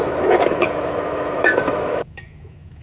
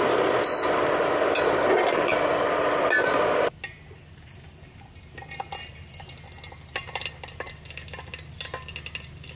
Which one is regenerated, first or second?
first